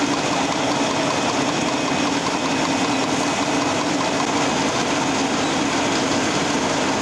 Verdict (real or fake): real